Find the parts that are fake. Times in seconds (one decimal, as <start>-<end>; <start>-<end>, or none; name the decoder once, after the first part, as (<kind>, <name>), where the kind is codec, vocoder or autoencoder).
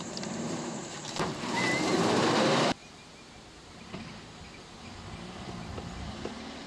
0.0-2.8 (vocoder, BigVGAN v2); 6.0-6.7